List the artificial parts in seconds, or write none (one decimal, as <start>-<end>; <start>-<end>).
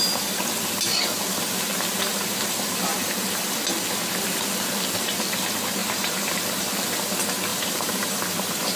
2.1-3.5; 5.8-6.7; 7.5-8.2